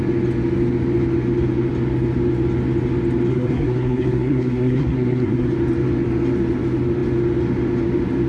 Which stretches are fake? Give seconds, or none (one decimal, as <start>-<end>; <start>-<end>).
3.3-5.5